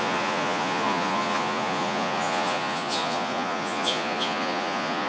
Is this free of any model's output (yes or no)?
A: no